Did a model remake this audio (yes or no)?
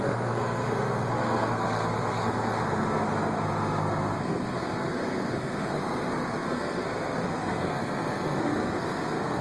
yes